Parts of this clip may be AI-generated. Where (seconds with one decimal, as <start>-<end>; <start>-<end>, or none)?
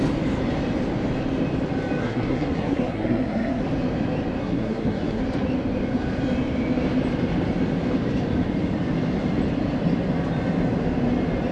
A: 2.0-3.6; 4.4-5.2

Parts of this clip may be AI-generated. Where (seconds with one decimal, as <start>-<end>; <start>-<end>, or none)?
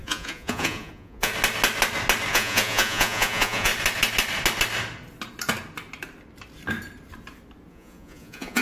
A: 0.0-1.3; 2.3-3.7; 7.7-8.6